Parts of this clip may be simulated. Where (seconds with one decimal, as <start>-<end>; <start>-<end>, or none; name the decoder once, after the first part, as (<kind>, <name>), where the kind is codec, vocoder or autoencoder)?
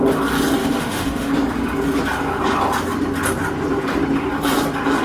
0.6-1.3 (autoencoder, DAC-VAE)